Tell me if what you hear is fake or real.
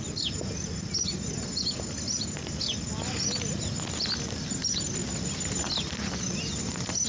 real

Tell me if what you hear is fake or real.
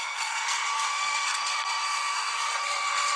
fake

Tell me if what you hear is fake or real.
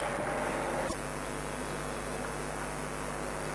real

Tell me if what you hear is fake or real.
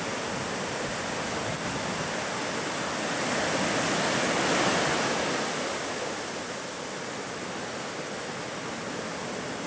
real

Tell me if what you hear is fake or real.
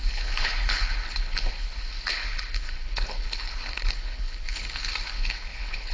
fake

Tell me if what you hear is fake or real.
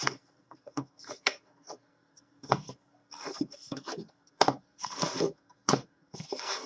fake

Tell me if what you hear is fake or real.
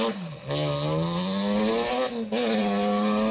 real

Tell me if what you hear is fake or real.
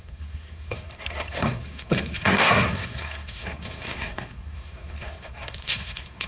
fake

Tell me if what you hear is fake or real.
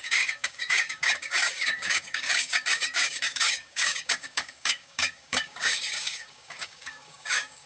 fake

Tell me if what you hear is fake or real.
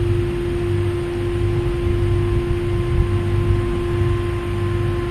real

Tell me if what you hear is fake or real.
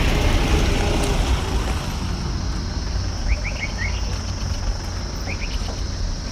real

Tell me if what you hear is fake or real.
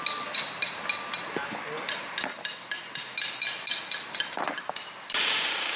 real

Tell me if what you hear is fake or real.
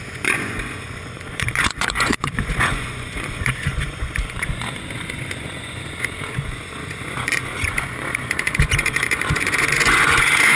fake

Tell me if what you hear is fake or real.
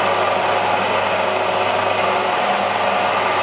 real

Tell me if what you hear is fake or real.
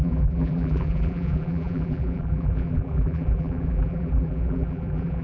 fake